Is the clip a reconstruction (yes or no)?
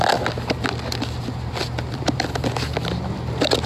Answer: no